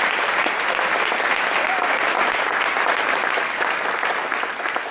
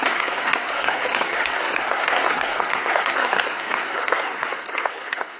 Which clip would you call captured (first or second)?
first